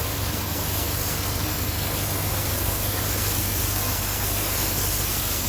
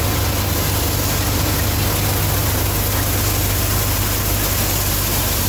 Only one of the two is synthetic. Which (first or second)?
first